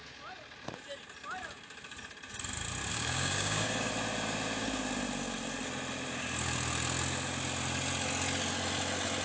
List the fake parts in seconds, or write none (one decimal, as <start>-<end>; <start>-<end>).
2.9-3.9